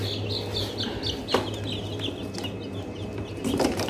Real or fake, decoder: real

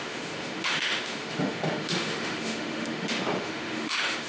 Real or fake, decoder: fake, autoencoder, DAC-VAE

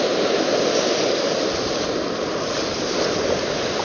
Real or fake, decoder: real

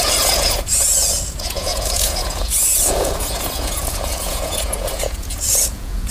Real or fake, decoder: fake, vocoder, Vocos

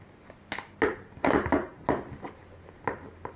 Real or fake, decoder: real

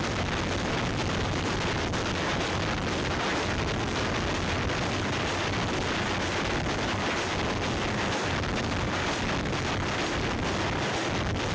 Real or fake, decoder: real